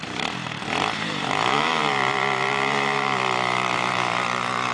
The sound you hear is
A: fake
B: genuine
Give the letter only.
A